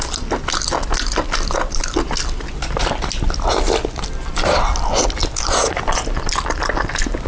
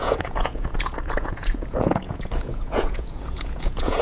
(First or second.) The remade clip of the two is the second